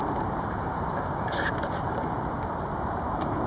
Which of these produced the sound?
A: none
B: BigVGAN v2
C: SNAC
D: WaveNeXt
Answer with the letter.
B